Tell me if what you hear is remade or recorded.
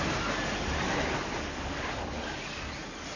recorded